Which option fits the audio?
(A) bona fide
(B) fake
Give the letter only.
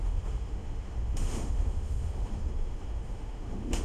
B